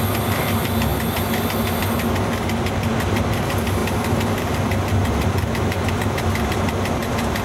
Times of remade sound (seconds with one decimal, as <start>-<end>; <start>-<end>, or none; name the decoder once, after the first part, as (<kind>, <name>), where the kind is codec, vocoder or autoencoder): none